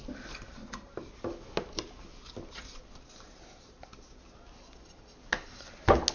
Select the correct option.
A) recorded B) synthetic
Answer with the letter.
A